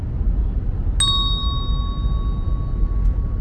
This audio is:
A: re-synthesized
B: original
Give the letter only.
B